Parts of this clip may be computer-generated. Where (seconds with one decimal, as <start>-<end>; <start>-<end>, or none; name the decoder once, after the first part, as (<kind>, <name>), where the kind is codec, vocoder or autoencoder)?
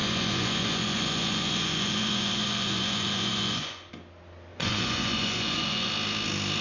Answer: 0.0-3.9 (vocoder, Vocos); 4.5-5.9